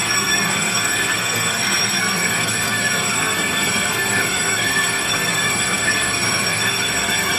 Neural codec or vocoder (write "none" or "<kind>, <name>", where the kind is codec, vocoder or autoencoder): codec, SNAC